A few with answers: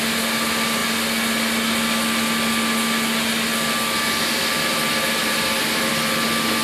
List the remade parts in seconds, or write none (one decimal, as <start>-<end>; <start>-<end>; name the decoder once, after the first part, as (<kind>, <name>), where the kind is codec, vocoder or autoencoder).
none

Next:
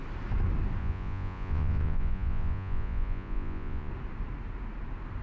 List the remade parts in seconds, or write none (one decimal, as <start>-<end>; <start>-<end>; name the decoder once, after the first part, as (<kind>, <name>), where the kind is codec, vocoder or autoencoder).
0.8-3.9 (vocoder, Vocos)

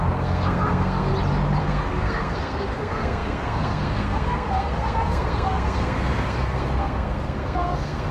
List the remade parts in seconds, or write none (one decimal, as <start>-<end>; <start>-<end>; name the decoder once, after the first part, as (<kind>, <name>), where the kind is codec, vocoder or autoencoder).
0.0-1.1 (codec, SNAC); 1.6-8.1

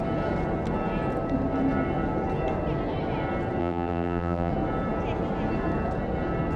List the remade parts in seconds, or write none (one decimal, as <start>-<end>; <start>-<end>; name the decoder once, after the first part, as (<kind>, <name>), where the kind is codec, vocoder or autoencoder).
3.6-4.5 (vocoder, BigVGAN v2)

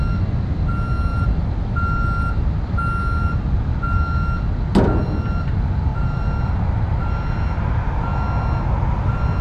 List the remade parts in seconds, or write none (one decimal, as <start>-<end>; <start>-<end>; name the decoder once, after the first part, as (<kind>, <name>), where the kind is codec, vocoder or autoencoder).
1.1-2.5 (vocoder, BigVGAN v2); 5.9-7.1

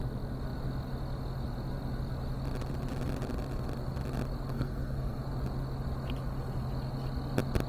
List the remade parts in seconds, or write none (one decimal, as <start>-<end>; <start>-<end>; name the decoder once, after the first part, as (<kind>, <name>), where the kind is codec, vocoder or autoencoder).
4.5-5.2 (codec, SNAC)